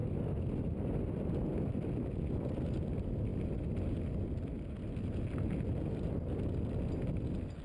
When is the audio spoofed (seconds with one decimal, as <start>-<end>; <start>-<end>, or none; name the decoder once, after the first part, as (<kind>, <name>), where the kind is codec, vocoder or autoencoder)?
none